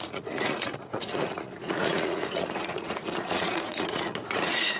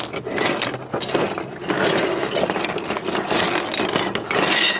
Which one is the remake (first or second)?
first